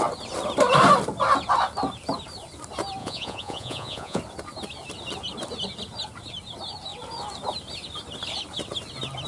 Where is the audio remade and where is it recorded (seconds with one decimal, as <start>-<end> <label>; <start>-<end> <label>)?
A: 0.0-3.0 recorded; 3.0-4.2 remade; 4.2-9.3 recorded